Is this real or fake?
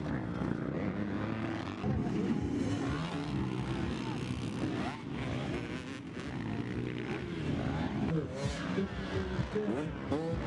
real